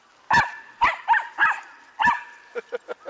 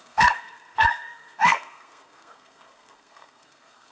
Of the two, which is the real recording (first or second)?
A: first